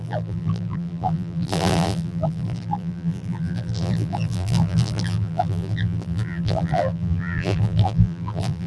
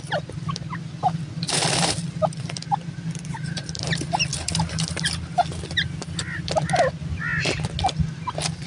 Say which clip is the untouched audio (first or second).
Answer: second